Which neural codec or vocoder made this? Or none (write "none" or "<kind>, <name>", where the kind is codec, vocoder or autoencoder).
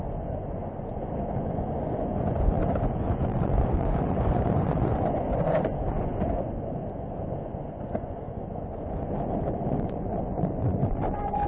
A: vocoder, Vocos